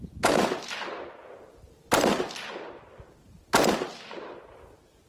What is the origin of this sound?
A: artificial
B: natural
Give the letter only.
B